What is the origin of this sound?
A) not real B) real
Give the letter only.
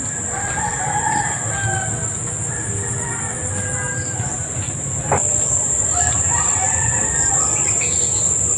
B